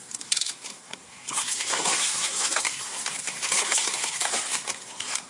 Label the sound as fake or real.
fake